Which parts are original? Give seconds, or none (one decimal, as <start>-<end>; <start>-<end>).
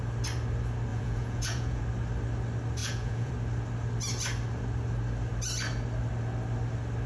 0.0-0.9; 1.8-2.8; 3.3-7.1